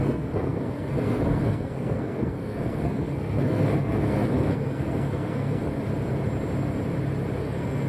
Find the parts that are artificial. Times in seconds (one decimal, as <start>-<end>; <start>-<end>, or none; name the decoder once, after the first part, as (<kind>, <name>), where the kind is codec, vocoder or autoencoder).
0.0-5.6 (codec, SNAC); 7.4-7.9